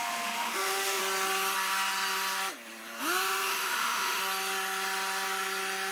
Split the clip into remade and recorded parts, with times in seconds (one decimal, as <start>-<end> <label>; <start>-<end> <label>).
0.0-1.0 remade; 1.0-3.0 recorded; 3.0-4.2 remade; 4.2-5.9 recorded